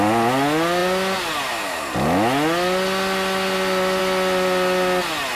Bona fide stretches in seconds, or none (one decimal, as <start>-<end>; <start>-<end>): 0.0-5.4